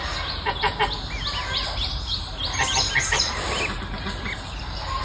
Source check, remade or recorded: recorded